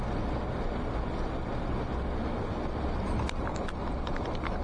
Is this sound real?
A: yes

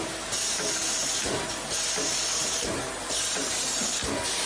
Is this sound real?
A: yes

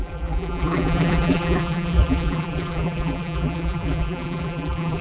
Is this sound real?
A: no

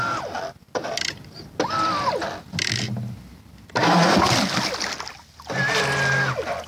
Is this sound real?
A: yes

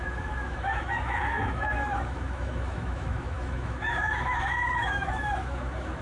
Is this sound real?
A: no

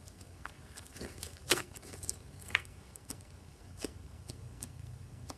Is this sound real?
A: no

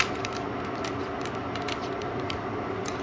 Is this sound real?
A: yes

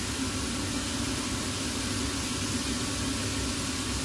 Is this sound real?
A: yes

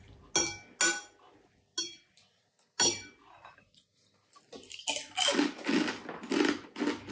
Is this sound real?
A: yes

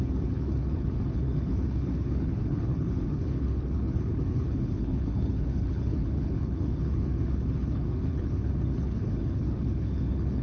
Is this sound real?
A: no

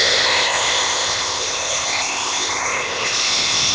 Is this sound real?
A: no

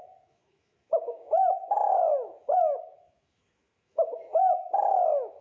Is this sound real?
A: no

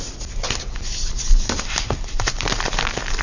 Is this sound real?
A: yes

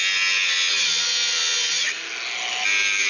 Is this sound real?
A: yes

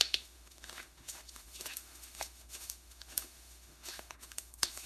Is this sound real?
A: no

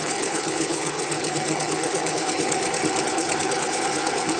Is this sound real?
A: no